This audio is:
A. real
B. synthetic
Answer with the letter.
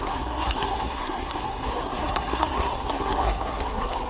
B